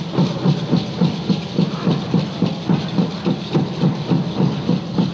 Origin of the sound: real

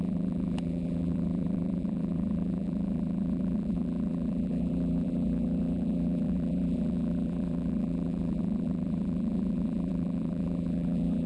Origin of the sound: fake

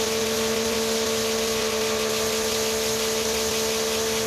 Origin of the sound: real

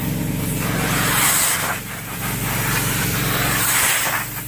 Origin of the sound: fake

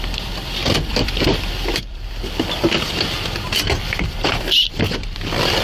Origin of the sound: fake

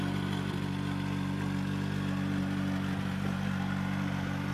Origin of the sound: real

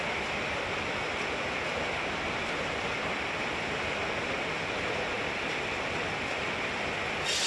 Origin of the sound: real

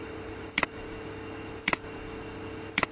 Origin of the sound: real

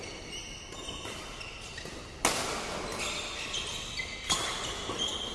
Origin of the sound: real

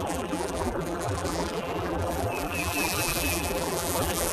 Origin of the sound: fake